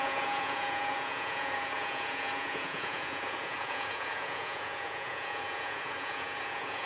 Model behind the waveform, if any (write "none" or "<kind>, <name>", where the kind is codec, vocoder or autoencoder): vocoder, Vocos